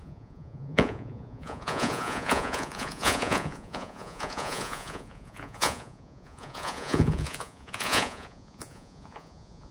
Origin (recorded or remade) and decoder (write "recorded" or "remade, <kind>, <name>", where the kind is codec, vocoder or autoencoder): remade, vocoder, Vocos